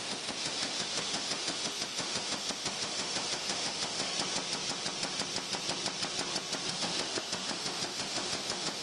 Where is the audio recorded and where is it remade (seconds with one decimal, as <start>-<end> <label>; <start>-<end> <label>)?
0.0-4.1 remade; 4.1-6.7 recorded; 6.7-8.8 remade

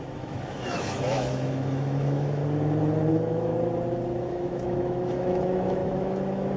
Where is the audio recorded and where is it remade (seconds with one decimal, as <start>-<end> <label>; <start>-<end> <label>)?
0.0-2.4 remade; 2.4-3.1 recorded; 3.1-3.5 remade; 3.5-4.2 recorded; 4.2-6.6 remade

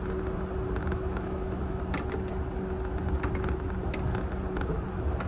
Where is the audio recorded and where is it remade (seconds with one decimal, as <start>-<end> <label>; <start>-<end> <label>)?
0.0-0.8 recorded; 0.8-1.8 remade; 1.8-5.3 recorded

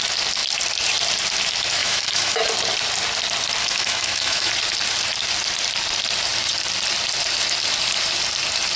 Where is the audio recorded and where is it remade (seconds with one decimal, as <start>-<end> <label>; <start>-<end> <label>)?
0.0-1.8 recorded; 1.8-2.4 remade; 2.4-3.6 recorded; 3.6-4.5 remade; 4.5-8.8 recorded

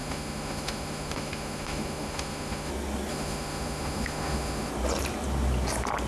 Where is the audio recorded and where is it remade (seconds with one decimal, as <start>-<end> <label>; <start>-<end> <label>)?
0.0-2.7 remade; 2.7-3.1 recorded; 3.1-4.7 remade; 4.7-6.1 recorded

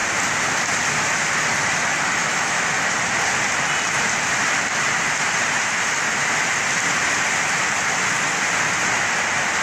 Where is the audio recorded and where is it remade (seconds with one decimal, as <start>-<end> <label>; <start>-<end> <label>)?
0.0-2.2 recorded; 2.2-2.7 remade; 2.7-9.6 recorded

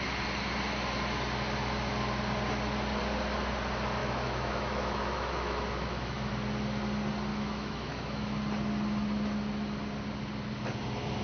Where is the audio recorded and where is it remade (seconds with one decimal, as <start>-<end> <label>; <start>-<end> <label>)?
0.0-4.0 recorded; 4.0-6.3 remade; 6.3-7.3 recorded; 7.3-8.4 remade; 8.4-11.2 recorded